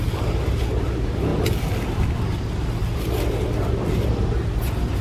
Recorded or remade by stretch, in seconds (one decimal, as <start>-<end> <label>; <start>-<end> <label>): 0.0-5.0 recorded